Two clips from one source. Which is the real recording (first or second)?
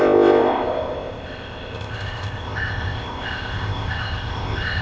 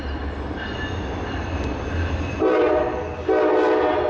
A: second